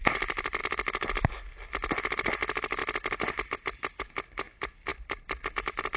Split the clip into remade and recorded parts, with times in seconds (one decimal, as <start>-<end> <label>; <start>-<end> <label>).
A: 0.0-0.6 recorded; 0.6-1.3 remade; 1.3-6.0 recorded